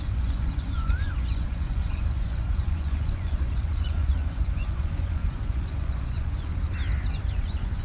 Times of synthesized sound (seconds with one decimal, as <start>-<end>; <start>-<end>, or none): 0.0-6.5; 7.2-7.8